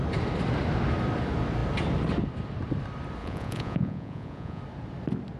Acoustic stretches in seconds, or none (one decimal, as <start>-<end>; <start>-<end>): 0.0-3.2; 4.6-5.4